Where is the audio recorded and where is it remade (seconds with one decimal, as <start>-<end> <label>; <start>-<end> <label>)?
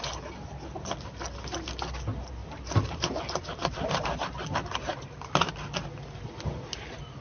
0.0-2.4 recorded; 2.4-5.2 remade; 5.2-7.2 recorded